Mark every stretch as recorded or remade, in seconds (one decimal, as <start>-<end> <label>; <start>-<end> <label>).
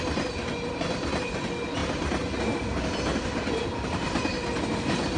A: 0.0-5.2 recorded